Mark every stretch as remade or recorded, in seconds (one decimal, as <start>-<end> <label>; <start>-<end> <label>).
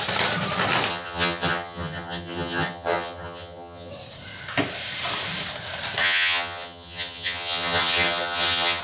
0.0-0.9 recorded; 0.9-3.9 remade; 3.9-6.0 recorded; 6.0-8.8 remade